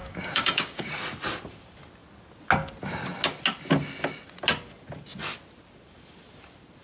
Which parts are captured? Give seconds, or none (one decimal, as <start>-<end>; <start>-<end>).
0.9-6.8